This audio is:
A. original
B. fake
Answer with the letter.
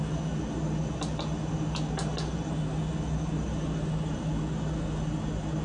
A